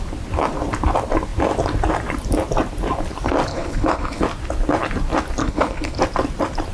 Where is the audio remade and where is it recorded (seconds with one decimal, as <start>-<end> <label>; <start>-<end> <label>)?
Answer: 0.0-3.5 recorded; 3.5-4.2 remade; 4.2-5.4 recorded; 5.4-6.0 remade; 6.0-6.7 recorded